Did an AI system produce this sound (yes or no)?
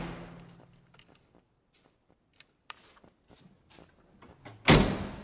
no